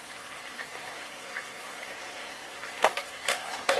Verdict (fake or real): fake